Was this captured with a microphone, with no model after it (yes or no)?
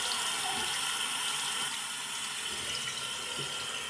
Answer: yes